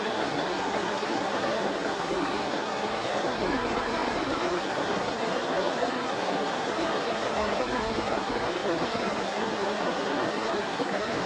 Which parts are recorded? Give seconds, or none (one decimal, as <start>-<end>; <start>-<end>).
none